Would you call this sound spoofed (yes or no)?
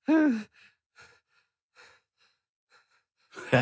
no